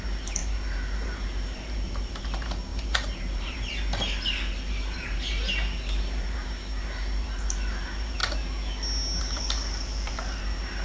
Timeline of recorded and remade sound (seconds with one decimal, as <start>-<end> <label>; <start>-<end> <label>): 0.0-8.2 remade; 8.2-9.2 recorded; 9.2-10.8 remade